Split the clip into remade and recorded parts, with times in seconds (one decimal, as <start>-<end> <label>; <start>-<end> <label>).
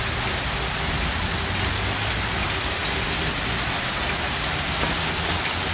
0.0-5.7 recorded